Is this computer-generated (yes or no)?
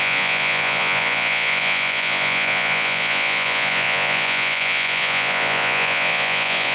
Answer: yes